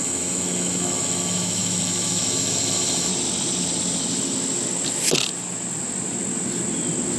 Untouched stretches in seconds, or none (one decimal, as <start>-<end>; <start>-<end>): 3.1-7.2